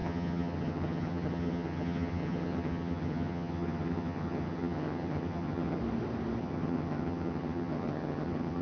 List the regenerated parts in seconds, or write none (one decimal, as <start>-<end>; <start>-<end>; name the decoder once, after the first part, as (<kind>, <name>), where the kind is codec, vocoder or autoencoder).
0.0-5.8 (vocoder, HiFi-GAN); 6.4-8.6